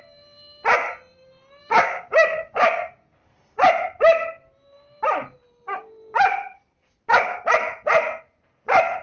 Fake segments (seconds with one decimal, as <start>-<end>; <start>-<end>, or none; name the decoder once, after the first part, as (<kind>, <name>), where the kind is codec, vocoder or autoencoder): 1.6-3.0 (codec, DAC)